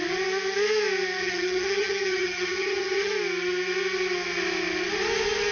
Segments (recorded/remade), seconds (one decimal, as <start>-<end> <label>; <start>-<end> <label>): 0.0-1.2 recorded; 1.2-3.1 remade; 3.1-5.5 recorded